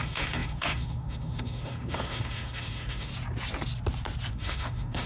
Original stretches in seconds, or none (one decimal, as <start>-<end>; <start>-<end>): 3.1-4.3